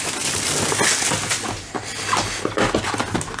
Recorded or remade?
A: recorded